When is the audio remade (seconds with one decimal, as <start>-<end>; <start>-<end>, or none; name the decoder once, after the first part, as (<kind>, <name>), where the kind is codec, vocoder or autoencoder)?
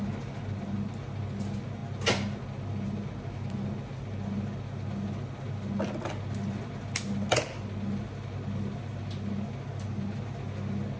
none